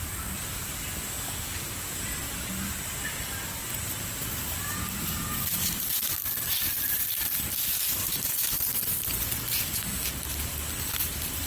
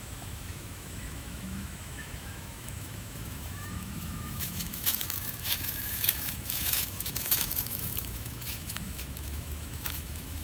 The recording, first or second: first